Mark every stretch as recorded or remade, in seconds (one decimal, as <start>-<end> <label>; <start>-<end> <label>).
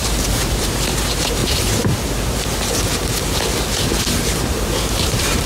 0.0-1.4 remade; 1.4-4.5 recorded; 4.5-5.5 remade